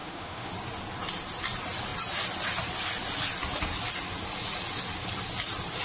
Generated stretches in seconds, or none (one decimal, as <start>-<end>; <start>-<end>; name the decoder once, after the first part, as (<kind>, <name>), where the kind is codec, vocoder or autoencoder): 0.0-0.5 (autoencoder, DAC-VAE)